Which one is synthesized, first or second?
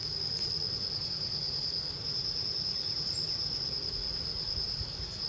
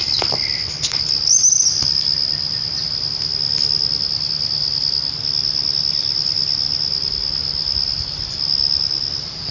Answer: first